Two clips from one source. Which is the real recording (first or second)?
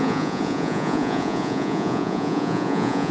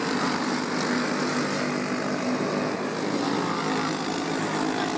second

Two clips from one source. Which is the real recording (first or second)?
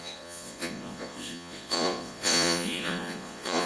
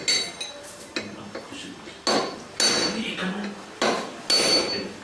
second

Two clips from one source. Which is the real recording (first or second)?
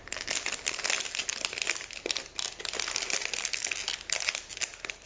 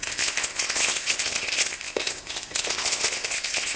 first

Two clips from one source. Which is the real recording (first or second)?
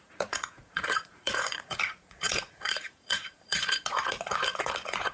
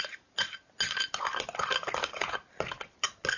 second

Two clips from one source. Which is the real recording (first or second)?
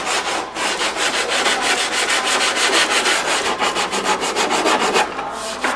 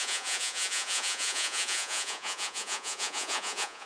first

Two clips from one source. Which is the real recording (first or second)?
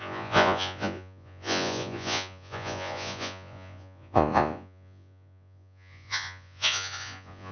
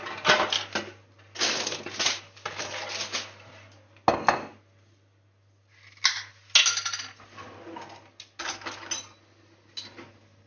second